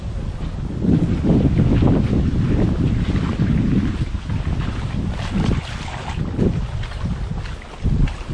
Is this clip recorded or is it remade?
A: recorded